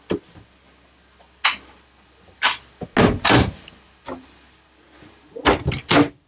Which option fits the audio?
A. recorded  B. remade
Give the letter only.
A